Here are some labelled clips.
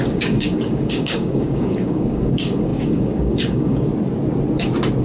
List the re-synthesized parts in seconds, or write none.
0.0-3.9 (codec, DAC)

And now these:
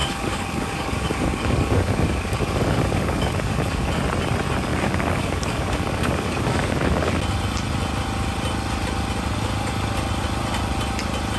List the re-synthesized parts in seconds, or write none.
0.0-3.9 (codec, DAC); 4.7-7.2

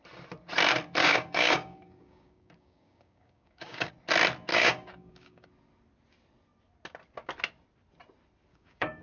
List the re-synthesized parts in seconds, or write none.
1.0-3.9 (codec, DAC); 4.5-5.5; 8.5-9.0